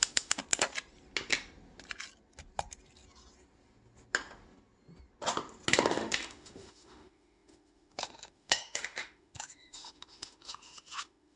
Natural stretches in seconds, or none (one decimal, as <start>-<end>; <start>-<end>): 0.4-5.7